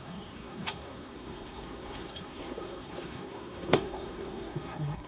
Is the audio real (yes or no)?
no